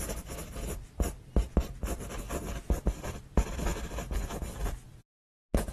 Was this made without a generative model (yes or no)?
yes